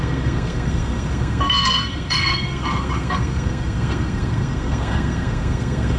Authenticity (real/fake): fake